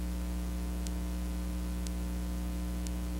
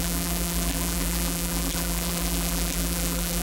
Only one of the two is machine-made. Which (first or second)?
second